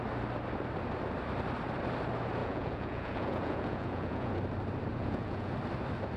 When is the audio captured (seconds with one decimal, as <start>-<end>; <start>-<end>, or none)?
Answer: 0.0-2.4; 4.3-4.9; 5.5-6.2